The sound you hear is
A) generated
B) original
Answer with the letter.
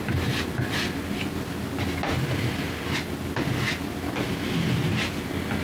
B